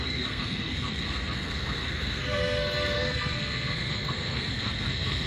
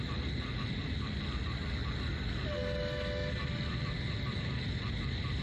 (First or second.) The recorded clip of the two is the second